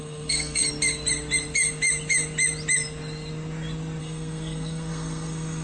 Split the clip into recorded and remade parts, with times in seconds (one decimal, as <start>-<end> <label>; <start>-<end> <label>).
0.0-0.6 remade; 0.6-4.0 recorded; 4.0-5.6 remade